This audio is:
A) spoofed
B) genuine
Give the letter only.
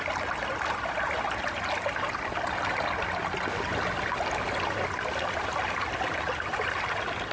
B